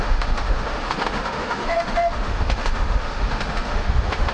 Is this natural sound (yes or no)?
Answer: no